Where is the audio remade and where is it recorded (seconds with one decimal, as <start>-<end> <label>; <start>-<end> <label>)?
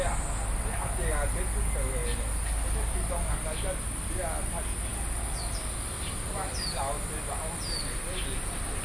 0.0-8.8 recorded